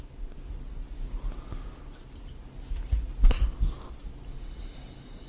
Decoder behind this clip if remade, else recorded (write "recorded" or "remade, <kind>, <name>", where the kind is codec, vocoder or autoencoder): recorded